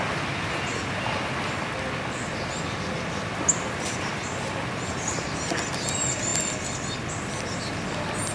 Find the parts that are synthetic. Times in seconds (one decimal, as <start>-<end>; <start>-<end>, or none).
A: none